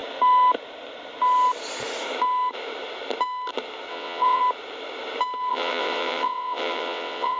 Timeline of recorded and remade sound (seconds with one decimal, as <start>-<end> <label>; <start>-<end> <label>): 0.0-3.9 recorded; 3.9-4.4 remade; 4.4-5.5 recorded; 5.5-7.4 remade